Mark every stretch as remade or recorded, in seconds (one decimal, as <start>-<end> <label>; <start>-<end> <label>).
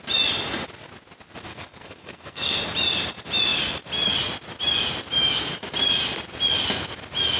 0.0-1.5 recorded; 1.5-2.6 remade; 2.6-7.4 recorded